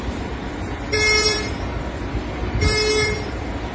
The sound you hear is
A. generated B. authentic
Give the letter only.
A